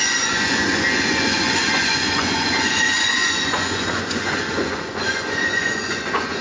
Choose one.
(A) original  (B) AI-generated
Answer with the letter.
B